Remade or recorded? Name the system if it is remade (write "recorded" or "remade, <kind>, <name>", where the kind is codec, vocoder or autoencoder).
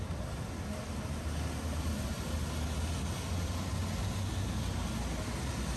recorded